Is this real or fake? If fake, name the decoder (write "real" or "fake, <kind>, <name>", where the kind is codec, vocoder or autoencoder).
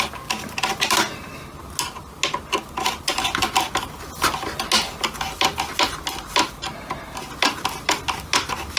real